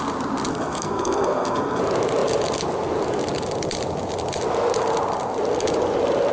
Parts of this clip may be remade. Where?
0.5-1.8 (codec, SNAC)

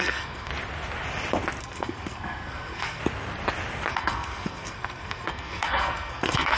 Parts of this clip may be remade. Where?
0.0-0.5 (codec, SNAC); 1.6-3.0; 3.9-6.6